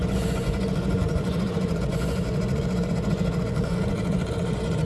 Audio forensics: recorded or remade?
remade